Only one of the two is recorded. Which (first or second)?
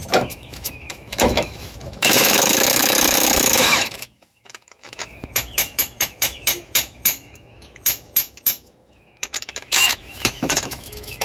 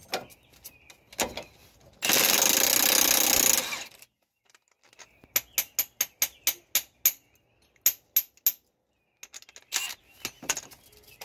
second